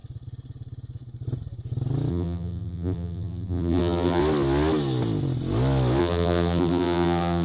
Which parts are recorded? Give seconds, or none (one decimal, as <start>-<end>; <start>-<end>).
0.0-2.1; 4.2-6.0